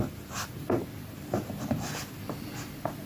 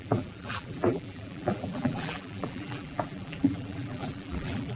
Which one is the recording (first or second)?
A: first